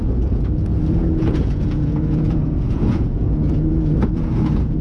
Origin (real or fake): fake